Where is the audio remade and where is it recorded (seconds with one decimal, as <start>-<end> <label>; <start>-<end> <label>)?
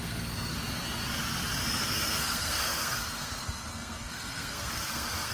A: 0.0-0.5 remade; 0.5-1.7 recorded; 1.7-5.3 remade